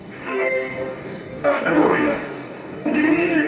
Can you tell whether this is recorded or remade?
remade